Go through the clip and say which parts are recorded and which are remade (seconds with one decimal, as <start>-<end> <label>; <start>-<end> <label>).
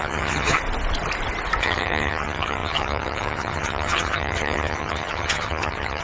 0.0-0.6 remade; 0.6-1.6 recorded; 1.6-6.0 remade